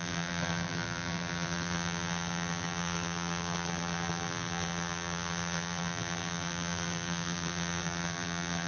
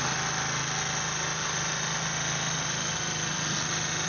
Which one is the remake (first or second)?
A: first